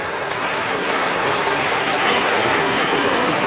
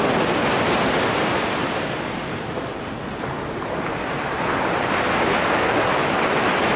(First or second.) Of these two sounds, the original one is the second